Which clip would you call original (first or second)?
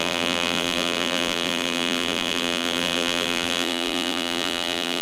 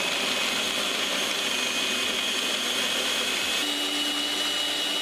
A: second